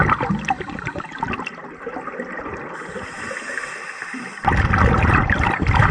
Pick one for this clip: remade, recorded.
recorded